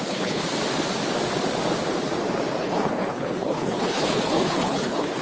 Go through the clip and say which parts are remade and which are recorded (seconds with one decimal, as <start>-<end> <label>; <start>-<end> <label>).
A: 0.0-0.4 remade; 0.4-2.6 recorded; 2.6-5.2 remade